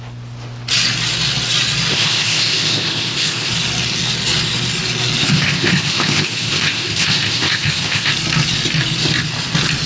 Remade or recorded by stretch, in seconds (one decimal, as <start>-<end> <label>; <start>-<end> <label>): 0.0-1.9 recorded; 1.9-3.5 remade; 3.5-5.2 recorded; 5.2-8.1 remade; 8.1-9.9 recorded